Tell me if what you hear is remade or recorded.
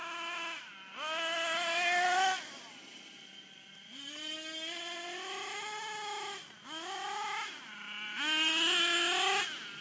recorded